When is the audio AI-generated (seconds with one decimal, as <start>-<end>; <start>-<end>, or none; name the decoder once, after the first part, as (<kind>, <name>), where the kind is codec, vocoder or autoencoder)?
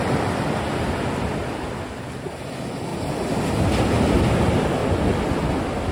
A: none